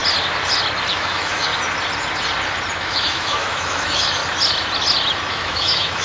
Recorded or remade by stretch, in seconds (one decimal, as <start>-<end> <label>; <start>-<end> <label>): 0.0-0.9 recorded; 0.9-1.5 remade; 1.5-2.8 recorded; 2.8-4.2 remade; 4.2-5.3 recorded; 5.3-6.0 remade